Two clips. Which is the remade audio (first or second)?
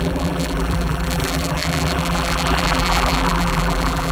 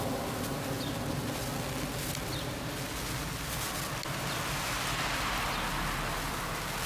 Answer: first